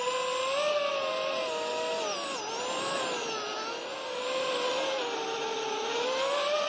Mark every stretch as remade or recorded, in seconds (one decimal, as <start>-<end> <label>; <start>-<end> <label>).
0.0-6.7 recorded

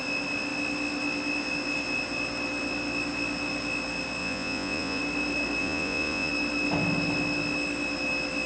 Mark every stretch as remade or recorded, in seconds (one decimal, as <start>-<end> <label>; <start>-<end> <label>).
0.0-4.2 recorded; 4.2-5.0 remade; 5.0-5.6 recorded; 5.6-6.3 remade; 6.3-8.5 recorded

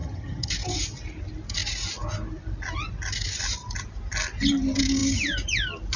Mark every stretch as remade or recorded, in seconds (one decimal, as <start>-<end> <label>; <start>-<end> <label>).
0.0-0.5 remade; 0.5-6.0 recorded

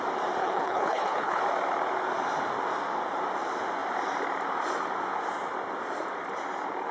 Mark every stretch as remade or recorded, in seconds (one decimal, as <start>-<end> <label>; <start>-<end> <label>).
0.0-0.4 recorded; 0.4-1.4 remade; 1.4-6.9 recorded

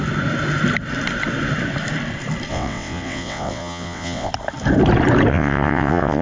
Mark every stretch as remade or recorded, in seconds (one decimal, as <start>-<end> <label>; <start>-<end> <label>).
0.0-2.5 recorded; 2.5-4.3 remade; 4.3-5.3 recorded; 5.3-6.2 remade

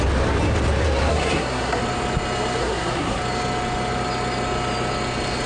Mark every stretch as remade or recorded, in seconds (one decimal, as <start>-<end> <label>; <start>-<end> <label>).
0.0-1.1 recorded; 1.1-1.8 remade; 1.8-2.6 recorded; 2.6-3.2 remade; 3.2-5.5 recorded